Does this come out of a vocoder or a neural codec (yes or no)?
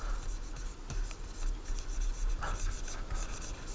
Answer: no